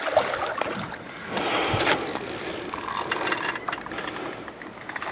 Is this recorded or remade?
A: recorded